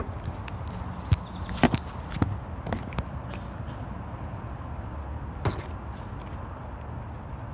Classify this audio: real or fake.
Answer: real